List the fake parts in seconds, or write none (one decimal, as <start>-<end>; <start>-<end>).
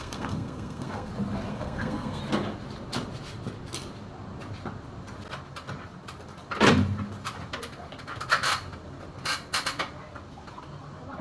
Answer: 0.0-1.1; 1.5-2.2